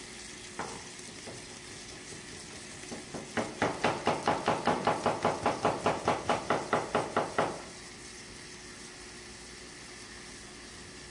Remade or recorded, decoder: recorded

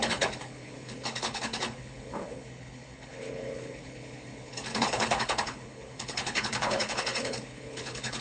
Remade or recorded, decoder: remade, codec, HILCodec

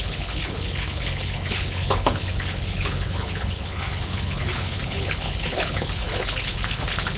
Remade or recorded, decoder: remade, codec, HILCodec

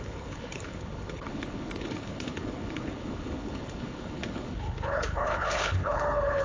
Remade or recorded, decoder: remade, codec, HILCodec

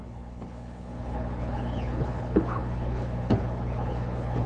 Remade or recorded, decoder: remade, codec, HILCodec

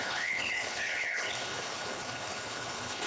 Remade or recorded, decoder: remade, codec, HILCodec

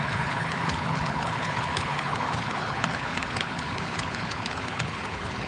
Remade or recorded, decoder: remade, codec, HILCodec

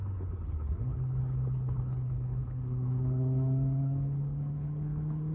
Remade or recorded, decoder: remade, codec, HILCodec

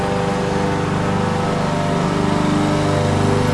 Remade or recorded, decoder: recorded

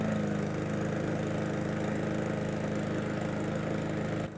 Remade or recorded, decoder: recorded